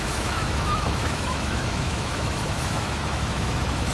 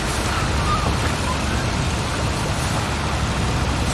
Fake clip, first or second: first